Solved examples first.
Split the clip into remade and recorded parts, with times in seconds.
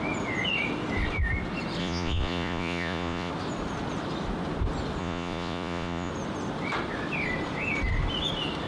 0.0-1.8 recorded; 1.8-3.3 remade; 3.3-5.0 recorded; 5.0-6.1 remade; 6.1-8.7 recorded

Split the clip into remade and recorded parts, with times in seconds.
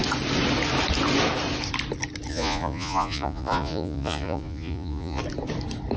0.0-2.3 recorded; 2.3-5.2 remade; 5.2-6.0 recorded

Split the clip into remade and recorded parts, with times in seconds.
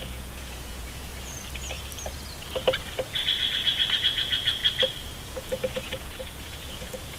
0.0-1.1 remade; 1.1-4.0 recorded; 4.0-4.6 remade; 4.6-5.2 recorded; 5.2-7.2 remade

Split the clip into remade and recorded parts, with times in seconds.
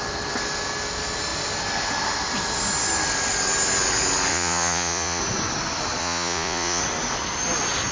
0.0-4.3 recorded; 4.3-5.2 remade; 5.2-6.0 recorded; 6.0-6.8 remade; 6.8-7.9 recorded